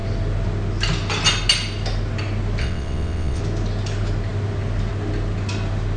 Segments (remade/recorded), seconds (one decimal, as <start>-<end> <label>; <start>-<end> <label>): 0.0-2.6 recorded; 2.6-3.4 remade; 3.4-6.0 recorded

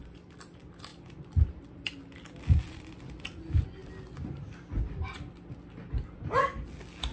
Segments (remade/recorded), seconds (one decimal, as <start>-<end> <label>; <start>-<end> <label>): 0.0-7.1 recorded

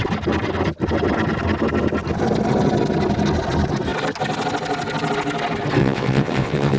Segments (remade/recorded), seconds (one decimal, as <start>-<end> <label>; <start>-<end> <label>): 0.0-5.8 recorded; 5.8-6.8 remade

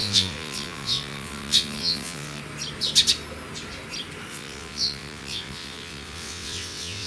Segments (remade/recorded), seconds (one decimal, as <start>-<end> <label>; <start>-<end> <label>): 0.0-2.4 remade; 2.4-4.3 recorded; 4.3-7.1 remade

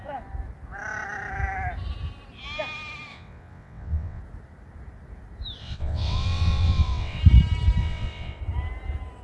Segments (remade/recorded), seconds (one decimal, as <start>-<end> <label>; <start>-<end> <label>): 0.0-3.1 recorded; 3.1-4.2 remade; 4.2-5.6 recorded; 5.6-7.2 remade; 7.2-7.8 recorded; 7.8-8.4 remade; 8.4-9.2 recorded

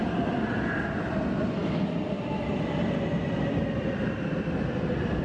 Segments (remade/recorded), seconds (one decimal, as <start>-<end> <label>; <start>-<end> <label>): 0.0-5.2 recorded

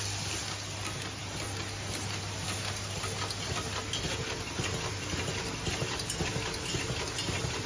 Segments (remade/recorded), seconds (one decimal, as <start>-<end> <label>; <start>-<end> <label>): 0.0-7.7 recorded

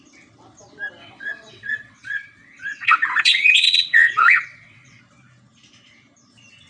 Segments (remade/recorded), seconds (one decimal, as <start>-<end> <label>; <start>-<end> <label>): 0.0-1.0 recorded; 1.0-5.0 remade; 5.0-6.7 recorded